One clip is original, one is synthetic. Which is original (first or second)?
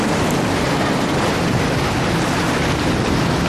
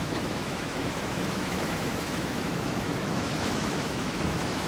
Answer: first